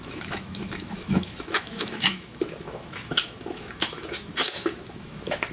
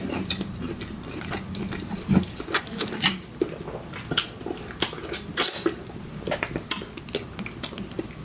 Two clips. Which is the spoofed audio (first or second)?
first